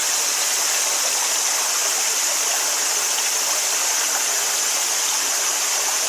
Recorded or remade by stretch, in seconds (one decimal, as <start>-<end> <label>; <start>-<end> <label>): 0.0-0.8 recorded; 0.8-6.1 remade